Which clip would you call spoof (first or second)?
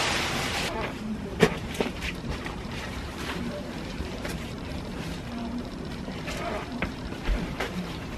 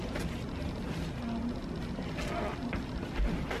first